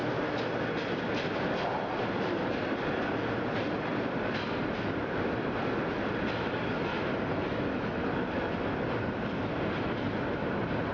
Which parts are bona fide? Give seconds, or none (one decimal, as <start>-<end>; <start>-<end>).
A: 0.0-6.9; 8.0-10.9